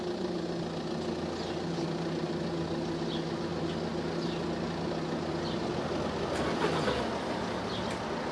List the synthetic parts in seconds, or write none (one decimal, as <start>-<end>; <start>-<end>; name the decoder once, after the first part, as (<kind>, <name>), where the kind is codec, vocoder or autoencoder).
none